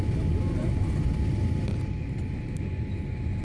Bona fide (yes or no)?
yes